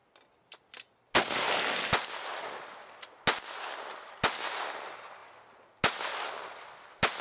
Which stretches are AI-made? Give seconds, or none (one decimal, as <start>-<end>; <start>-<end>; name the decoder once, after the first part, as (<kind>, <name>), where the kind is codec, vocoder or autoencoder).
none